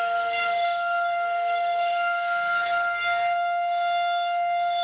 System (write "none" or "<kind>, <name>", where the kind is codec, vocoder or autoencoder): codec, SNAC